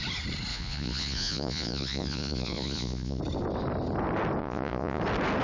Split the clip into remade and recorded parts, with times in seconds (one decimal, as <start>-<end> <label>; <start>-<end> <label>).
0.0-0.5 recorded; 0.5-3.2 remade; 3.2-4.4 recorded; 4.4-5.0 remade; 5.0-5.4 recorded